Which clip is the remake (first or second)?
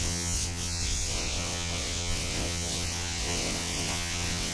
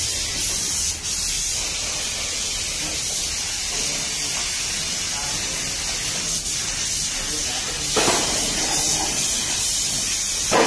first